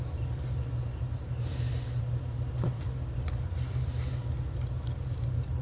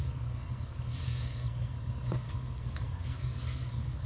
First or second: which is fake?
second